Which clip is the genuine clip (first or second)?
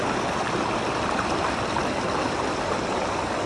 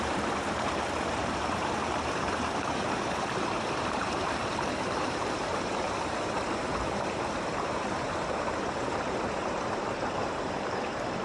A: first